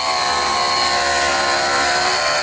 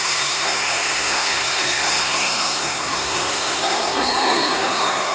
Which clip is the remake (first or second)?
second